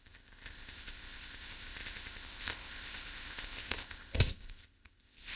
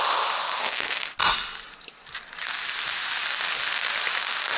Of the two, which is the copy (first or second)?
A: first